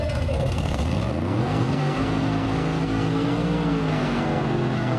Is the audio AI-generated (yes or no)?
yes